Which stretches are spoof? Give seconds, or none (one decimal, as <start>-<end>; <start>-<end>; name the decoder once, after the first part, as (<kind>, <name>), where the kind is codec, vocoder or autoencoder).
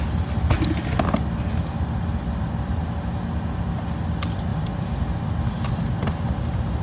none